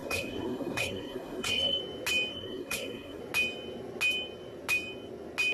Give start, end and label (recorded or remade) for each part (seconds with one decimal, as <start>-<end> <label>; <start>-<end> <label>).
0.0-1.8 remade; 1.8-2.3 recorded; 2.3-3.2 remade; 3.2-5.5 recorded